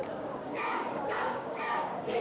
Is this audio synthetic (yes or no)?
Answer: yes